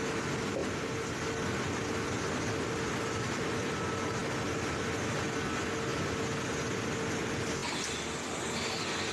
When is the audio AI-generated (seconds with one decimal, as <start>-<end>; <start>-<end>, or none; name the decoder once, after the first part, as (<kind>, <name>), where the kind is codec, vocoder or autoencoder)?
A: none